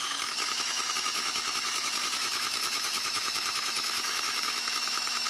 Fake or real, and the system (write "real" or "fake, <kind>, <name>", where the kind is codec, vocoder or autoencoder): fake, autoencoder, DAC-VAE